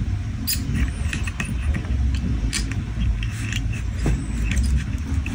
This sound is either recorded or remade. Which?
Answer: recorded